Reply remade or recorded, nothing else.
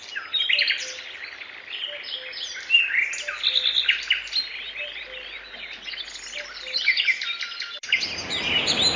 recorded